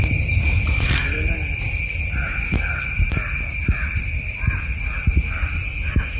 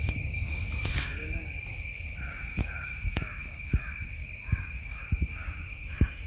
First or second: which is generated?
second